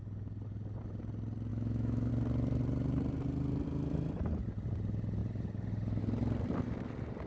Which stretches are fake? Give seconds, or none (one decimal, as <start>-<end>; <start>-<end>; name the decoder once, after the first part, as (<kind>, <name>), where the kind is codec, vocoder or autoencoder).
1.5-2.1 (autoencoder, DAC-VAE)